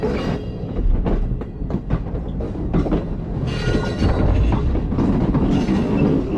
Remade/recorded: recorded